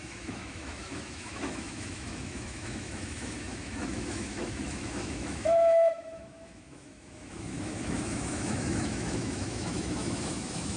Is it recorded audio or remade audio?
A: remade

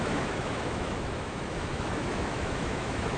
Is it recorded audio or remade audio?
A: remade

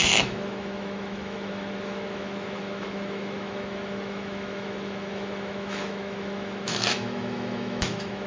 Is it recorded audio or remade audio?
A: remade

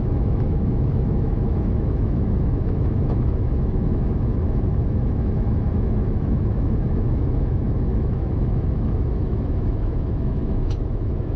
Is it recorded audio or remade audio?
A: remade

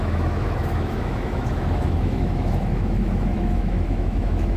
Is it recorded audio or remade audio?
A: remade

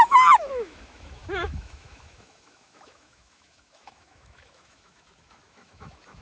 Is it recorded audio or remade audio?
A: remade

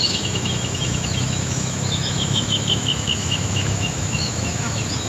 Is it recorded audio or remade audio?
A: remade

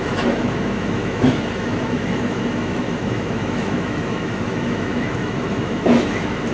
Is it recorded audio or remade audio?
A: remade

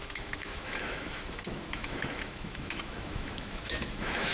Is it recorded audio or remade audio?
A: remade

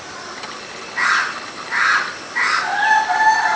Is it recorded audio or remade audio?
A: recorded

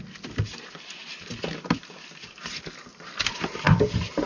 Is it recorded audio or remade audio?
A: recorded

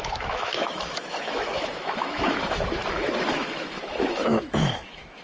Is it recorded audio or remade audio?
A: remade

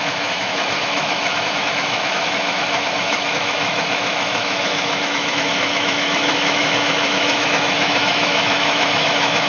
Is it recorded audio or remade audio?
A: remade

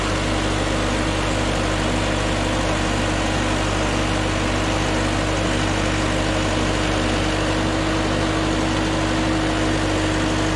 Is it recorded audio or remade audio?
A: recorded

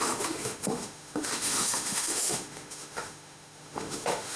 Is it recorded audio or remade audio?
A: remade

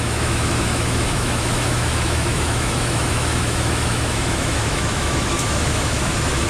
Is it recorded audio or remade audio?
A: remade